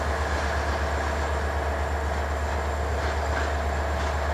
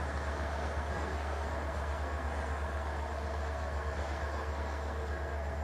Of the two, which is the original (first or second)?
first